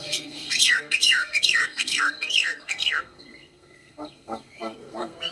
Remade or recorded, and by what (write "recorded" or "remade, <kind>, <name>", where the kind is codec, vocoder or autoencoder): remade, codec, SNAC